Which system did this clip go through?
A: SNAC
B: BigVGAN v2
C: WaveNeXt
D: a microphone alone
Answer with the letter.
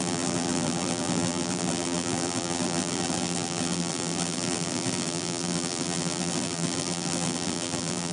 B